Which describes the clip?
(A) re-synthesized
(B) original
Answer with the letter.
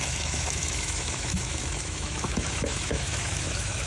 A